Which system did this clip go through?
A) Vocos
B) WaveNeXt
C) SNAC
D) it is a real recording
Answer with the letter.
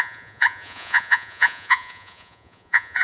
A